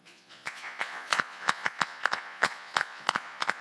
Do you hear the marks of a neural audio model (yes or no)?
yes